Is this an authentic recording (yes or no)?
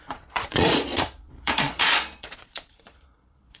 no